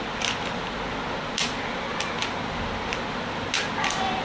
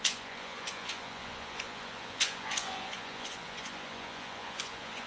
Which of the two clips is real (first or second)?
first